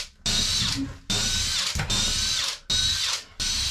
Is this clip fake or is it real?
real